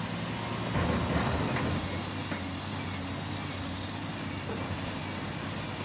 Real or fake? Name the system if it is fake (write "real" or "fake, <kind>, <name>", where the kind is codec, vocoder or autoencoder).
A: real